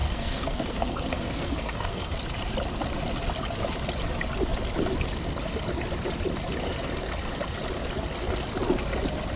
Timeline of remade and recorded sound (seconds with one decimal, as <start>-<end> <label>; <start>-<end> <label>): 0.0-2.2 remade; 2.2-9.4 recorded